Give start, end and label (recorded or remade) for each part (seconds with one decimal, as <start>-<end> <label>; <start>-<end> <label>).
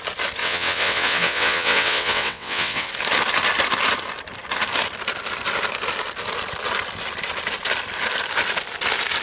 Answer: 0.0-0.4 recorded; 0.4-2.9 remade; 2.9-9.2 recorded